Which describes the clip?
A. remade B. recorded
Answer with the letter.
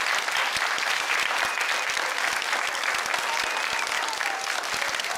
B